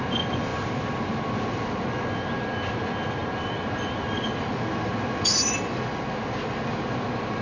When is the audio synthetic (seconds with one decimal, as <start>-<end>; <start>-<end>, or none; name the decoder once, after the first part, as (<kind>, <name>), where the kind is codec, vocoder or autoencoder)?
none